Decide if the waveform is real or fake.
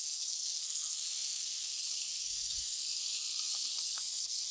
fake